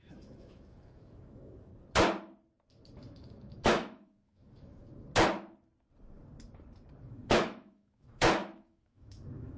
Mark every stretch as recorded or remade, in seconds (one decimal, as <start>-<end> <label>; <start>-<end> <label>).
0.0-1.7 remade; 1.7-3.0 recorded; 3.0-4.8 remade; 4.8-7.0 recorded; 7.0-9.6 remade